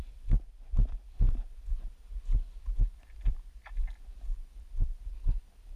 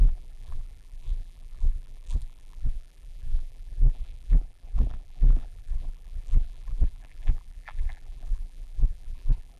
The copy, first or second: second